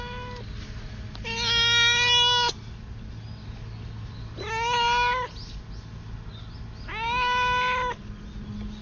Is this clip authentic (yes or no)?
yes